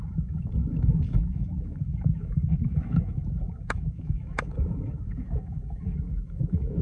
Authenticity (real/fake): fake